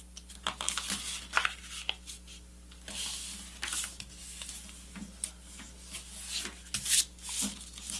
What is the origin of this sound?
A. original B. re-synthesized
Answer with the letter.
A